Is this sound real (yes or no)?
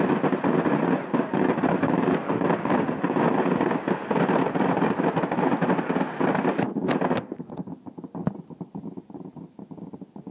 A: yes